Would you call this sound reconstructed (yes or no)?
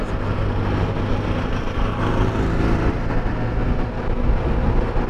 no